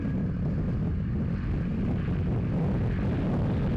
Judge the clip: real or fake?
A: real